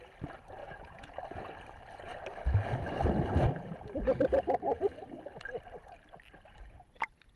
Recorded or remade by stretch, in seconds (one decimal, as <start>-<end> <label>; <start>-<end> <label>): 0.0-0.6 recorded; 0.6-1.2 remade; 1.2-7.4 recorded